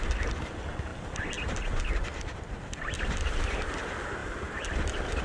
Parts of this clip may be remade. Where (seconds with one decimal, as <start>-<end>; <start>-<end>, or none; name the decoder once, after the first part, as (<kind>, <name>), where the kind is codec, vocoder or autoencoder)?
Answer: none